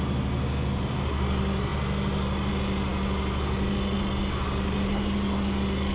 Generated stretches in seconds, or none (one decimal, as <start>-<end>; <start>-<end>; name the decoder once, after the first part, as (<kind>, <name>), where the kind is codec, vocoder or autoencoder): none